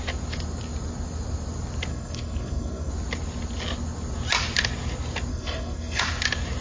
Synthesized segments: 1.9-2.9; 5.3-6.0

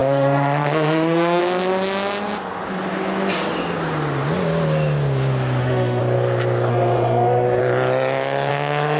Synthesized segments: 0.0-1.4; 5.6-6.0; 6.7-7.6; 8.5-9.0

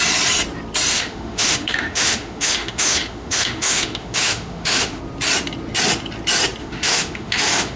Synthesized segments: 0.9-5.0; 6.6-7.8

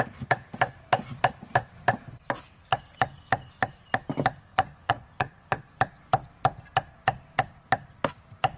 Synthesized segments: 4.5-5.8

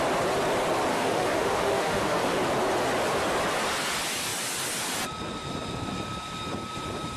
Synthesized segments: 0.9-2.4

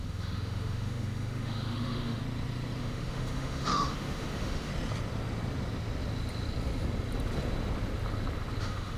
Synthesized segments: 0.0-2.2; 2.8-4.7; 8.6-9.0

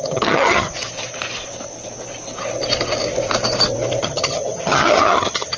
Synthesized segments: 0.0-0.7; 4.0-5.6

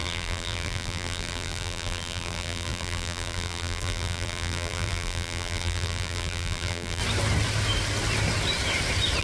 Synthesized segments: 0.0-7.0